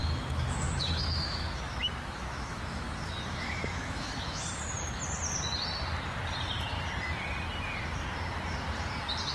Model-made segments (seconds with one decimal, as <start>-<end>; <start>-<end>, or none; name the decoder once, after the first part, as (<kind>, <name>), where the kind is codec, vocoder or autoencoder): 0.0-4.4 (autoencoder, DAC-VAE)